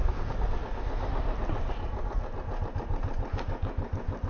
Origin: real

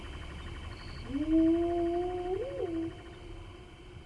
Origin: real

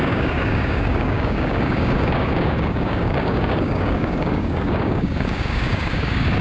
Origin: fake